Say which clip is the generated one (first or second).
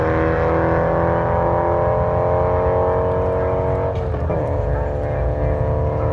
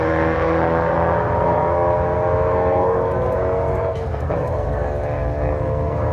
second